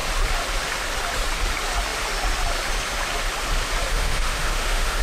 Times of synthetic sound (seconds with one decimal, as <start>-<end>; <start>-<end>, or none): 3.9-5.0